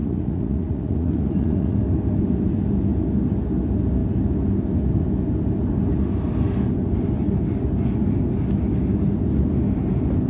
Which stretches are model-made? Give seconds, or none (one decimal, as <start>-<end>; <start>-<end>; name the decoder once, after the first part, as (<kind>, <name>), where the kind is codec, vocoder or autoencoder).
0.0-1.8 (vocoder, Vocos)